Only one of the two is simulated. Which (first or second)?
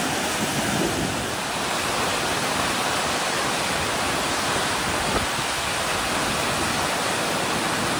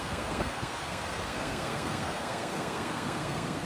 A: second